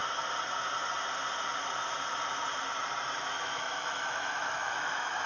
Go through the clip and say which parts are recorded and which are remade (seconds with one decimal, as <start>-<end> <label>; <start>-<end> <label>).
0.0-3.2 recorded; 3.2-5.3 remade